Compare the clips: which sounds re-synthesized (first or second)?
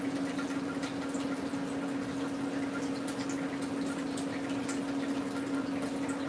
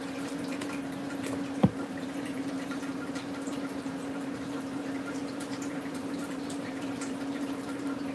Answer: second